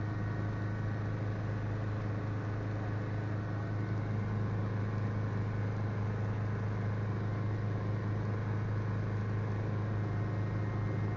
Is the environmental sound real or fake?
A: real